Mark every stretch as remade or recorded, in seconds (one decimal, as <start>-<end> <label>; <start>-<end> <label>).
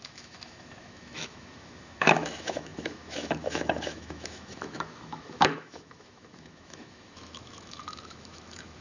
0.0-8.8 remade